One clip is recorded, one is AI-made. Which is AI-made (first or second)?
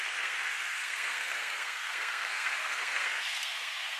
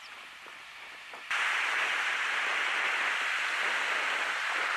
first